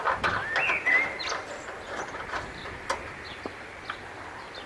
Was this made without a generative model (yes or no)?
yes